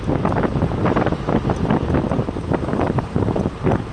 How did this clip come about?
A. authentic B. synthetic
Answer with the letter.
A